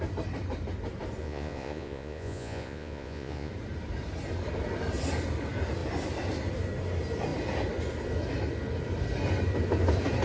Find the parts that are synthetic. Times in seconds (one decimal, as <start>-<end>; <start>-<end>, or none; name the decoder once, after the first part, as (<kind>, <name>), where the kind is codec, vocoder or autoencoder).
1.2-3.5 (vocoder, Vocos)